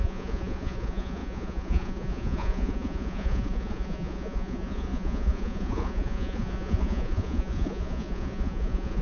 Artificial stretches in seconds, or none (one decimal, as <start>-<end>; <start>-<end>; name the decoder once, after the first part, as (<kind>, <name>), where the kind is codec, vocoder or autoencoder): 0.0-9.0 (vocoder, Vocos)